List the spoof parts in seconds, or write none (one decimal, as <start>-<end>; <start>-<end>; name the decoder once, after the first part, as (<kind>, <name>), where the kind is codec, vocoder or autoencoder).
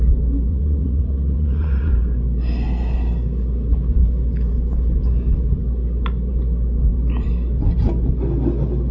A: 0.5-1.9 (vocoder, Vocos)